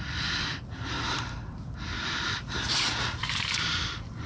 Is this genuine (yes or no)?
yes